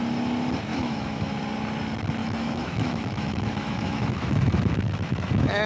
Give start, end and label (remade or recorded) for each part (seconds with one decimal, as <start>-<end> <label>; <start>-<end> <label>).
0.0-0.7 recorded; 0.7-1.3 remade; 1.3-2.2 recorded; 2.2-5.7 remade